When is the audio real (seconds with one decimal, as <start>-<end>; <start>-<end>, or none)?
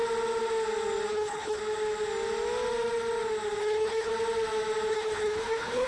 0.0-1.1; 1.6-3.6; 4.1-4.9